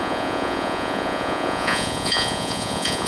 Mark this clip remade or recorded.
remade